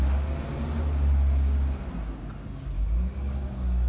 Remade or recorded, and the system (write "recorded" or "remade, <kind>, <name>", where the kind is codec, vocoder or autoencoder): recorded